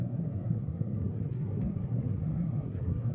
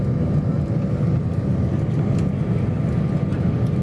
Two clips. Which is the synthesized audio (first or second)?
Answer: first